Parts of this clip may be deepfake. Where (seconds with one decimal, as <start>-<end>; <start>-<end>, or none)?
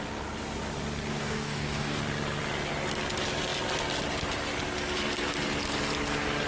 1.1-2.0